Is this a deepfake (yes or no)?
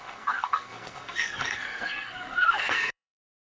yes